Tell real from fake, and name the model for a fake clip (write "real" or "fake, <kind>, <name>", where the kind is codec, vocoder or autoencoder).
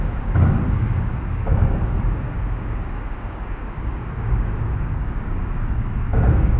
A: fake, codec, DAC